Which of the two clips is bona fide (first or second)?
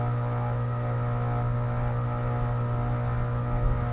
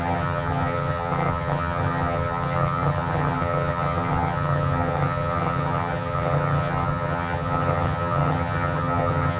first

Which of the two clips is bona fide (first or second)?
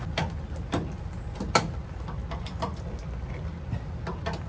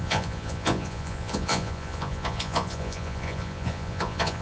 first